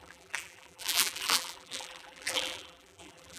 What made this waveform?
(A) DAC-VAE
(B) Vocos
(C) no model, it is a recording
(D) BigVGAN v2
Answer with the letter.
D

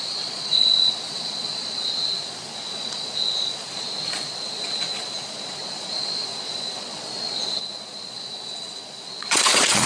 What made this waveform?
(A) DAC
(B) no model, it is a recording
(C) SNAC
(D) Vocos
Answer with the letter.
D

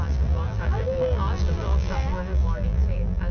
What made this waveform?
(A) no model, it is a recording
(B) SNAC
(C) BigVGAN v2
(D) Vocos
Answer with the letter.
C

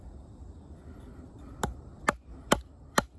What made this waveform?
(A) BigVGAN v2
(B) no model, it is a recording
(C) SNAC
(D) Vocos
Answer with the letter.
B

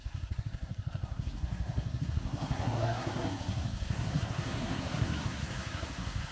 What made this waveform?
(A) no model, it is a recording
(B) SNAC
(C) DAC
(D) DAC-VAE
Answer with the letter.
B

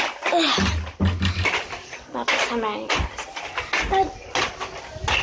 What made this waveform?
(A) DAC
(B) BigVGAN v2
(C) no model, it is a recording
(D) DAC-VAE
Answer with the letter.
C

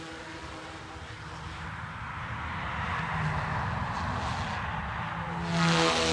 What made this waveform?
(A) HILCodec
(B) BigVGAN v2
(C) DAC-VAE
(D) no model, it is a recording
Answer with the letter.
D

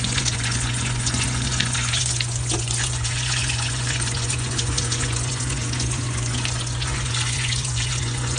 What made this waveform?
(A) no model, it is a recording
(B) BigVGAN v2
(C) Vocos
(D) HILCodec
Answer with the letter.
C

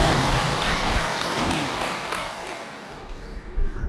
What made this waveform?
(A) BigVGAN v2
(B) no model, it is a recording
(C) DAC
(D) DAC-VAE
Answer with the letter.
C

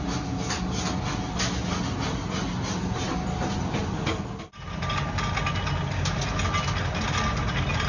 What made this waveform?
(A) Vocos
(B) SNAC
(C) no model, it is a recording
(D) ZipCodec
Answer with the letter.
C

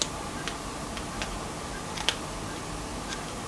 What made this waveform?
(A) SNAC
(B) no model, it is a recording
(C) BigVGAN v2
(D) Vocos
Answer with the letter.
B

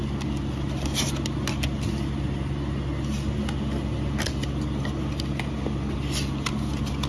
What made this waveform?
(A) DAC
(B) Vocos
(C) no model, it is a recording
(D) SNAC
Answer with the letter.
C